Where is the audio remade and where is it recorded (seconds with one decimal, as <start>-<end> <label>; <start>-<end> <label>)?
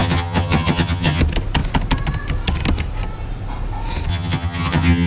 0.0-1.2 remade; 1.2-4.1 recorded; 4.1-5.1 remade